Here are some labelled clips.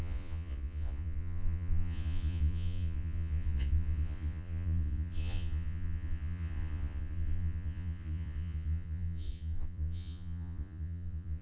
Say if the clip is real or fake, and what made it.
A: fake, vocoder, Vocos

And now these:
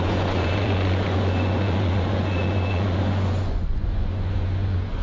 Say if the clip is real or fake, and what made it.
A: fake, vocoder, Vocos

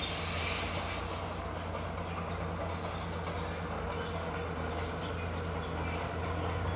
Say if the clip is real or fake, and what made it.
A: real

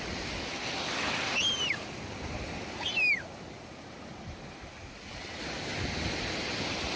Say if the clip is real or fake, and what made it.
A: real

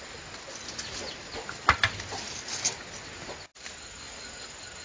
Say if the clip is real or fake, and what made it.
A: real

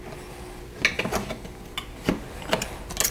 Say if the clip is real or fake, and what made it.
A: real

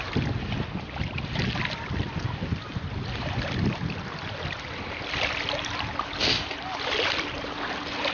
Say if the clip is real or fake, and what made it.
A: real